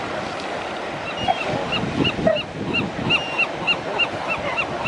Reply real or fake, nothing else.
real